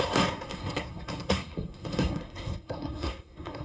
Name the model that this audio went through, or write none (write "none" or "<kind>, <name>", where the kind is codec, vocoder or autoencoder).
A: codec, SNAC